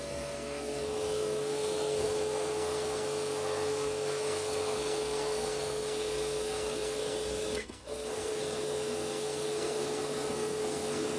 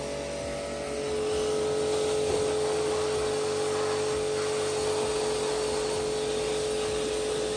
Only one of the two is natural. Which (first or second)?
second